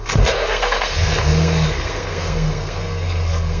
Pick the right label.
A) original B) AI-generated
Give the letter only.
B